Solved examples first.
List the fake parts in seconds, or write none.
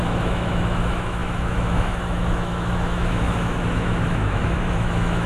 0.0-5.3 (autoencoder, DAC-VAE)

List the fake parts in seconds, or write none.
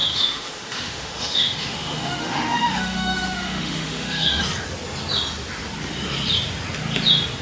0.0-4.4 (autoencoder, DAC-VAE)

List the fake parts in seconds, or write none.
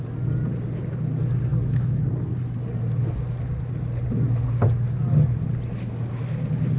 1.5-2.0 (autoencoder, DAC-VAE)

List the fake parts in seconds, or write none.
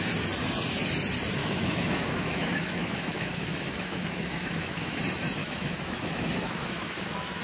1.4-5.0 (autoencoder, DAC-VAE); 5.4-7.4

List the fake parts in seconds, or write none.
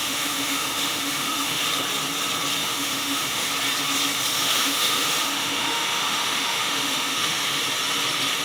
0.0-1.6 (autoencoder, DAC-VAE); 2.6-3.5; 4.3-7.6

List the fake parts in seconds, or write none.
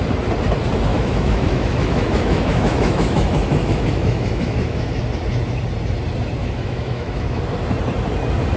0.9-4.9 (autoencoder, DAC-VAE); 6.4-7.4